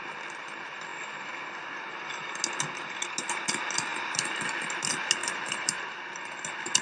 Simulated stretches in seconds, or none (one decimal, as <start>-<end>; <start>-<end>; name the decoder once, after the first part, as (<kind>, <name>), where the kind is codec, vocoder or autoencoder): 3.9-4.4 (vocoder, BigVGAN v2); 5.2-5.8